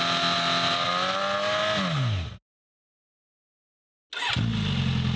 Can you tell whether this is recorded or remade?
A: recorded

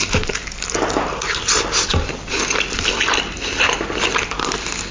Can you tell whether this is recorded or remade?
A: recorded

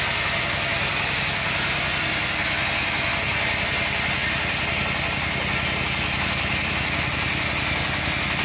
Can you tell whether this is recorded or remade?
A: recorded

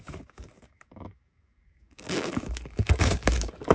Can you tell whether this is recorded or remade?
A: remade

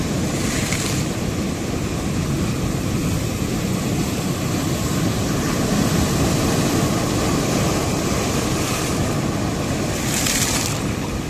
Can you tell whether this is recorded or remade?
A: recorded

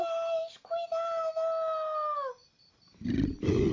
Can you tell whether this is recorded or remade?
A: recorded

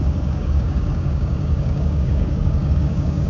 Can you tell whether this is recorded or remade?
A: remade